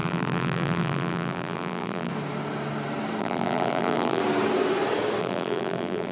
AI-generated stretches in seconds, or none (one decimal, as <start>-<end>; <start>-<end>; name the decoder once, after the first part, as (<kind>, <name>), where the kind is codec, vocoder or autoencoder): 0.0-2.1 (vocoder, BigVGAN v2); 3.2-4.2; 5.2-6.1